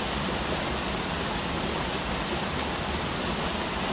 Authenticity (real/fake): real